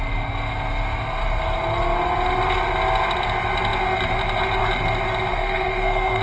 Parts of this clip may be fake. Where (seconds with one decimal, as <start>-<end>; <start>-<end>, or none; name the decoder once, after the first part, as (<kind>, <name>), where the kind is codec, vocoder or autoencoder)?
5.3-6.2 (codec, SNAC)